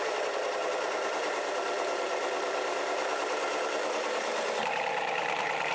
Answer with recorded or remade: remade